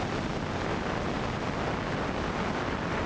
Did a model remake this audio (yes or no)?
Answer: no